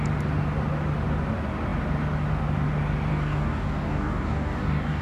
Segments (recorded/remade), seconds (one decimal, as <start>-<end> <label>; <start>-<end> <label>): 0.0-3.1 recorded; 3.1-5.0 remade